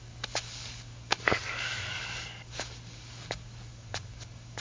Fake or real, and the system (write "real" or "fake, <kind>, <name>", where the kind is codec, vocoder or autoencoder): fake, codec, DAC